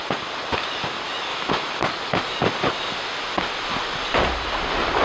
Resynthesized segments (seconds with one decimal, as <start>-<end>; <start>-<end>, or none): 1.3-1.8